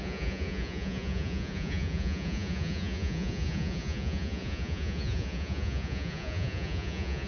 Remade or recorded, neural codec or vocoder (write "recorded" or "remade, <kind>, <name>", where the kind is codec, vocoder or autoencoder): remade, vocoder, Vocos